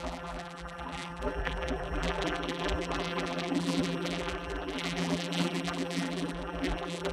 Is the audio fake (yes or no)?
yes